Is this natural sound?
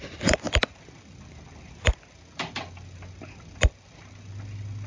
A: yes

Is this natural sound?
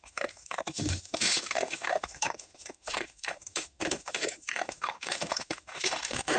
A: no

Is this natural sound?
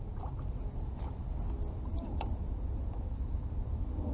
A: yes